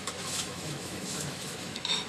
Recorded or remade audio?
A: remade